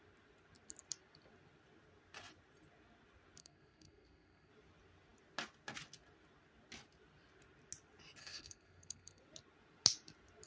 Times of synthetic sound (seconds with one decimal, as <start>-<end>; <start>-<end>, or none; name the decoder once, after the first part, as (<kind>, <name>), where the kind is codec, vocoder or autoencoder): 3.4-4.5 (codec, SNAC); 8.2-9.2